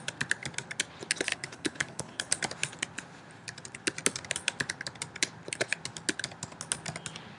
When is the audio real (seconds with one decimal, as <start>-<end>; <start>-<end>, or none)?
0.0-1.3; 2.4-7.4